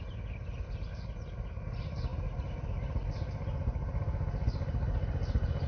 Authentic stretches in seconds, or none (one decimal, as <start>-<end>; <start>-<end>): 0.0-5.7